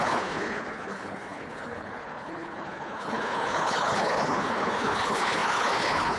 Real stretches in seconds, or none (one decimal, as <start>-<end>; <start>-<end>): none